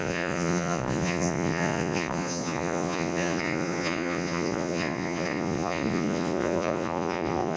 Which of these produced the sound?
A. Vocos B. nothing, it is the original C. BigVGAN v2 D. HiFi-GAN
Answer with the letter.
A